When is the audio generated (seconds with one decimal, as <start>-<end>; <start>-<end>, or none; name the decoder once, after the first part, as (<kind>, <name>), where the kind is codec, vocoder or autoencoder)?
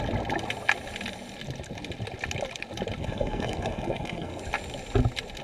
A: 3.0-4.4 (codec, SNAC)